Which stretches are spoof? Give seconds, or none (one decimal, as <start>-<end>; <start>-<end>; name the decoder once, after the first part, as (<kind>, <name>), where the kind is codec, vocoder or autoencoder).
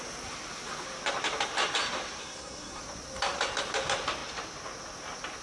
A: 2.2-2.8 (codec, SNAC)